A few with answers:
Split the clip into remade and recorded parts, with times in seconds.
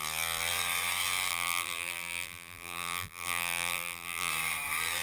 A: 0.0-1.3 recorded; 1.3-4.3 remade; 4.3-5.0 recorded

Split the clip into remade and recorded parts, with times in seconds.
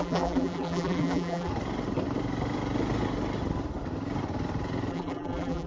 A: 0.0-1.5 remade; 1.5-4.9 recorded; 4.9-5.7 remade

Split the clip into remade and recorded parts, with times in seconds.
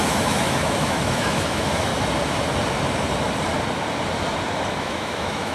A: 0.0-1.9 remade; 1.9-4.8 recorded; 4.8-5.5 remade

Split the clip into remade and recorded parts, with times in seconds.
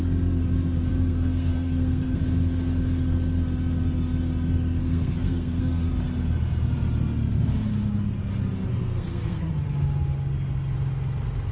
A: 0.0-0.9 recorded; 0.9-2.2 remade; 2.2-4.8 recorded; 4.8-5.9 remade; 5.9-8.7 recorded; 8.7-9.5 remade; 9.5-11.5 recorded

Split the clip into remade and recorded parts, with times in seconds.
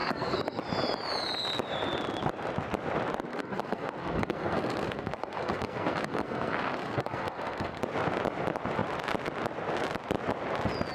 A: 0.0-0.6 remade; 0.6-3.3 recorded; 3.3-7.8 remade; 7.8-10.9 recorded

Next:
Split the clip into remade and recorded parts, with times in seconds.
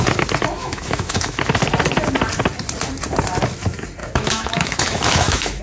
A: 0.0-0.6 recorded; 0.6-1.4 remade; 1.4-4.0 recorded; 4.0-5.6 remade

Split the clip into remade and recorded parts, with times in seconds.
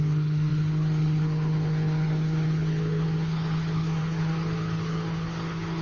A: 0.0-5.8 remade